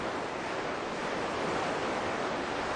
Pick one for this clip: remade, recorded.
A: recorded